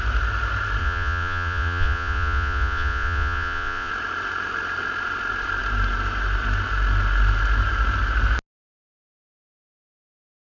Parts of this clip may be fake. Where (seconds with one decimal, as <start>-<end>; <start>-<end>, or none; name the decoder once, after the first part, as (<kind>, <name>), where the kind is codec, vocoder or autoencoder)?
0.8-3.9 (vocoder, Vocos)

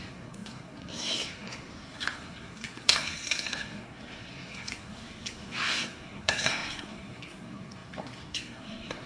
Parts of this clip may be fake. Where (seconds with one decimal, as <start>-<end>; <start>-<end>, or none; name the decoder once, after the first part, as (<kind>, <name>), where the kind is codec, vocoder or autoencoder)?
0.0-9.1 (codec, SNAC)

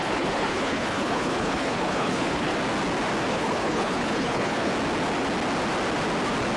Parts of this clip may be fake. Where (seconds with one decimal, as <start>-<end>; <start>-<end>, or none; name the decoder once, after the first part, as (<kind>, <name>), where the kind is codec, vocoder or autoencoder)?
0.0-2.5 (codec, HILCodec); 3.3-4.7

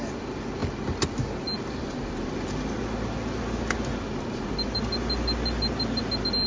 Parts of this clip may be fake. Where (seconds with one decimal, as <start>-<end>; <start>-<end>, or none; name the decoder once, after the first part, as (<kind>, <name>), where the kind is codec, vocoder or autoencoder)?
none

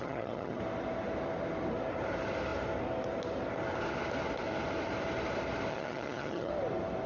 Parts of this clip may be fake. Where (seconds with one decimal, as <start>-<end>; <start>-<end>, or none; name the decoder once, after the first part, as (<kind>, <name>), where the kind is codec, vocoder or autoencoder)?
0.0-0.6 (vocoder, HiFi-GAN); 5.7-6.5

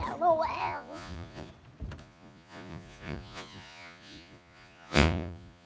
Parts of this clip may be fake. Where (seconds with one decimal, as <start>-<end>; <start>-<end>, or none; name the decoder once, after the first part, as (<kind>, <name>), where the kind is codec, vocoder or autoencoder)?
0.6-1.5 (vocoder, Vocos); 2.0-5.7